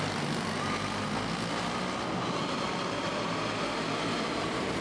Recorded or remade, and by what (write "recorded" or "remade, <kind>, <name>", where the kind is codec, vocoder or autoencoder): recorded